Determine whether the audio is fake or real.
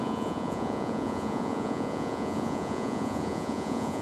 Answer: fake